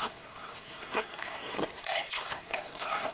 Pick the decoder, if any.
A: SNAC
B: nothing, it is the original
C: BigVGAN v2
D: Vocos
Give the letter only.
A